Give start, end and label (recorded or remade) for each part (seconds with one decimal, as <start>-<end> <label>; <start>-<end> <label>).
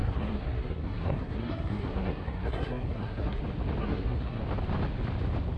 0.0-3.4 remade; 3.4-3.8 recorded; 3.8-4.4 remade; 4.4-5.6 recorded